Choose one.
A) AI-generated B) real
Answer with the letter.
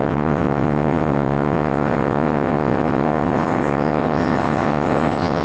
A